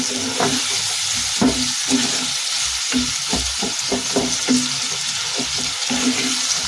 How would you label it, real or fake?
real